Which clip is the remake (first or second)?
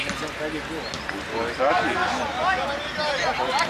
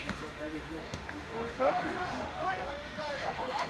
second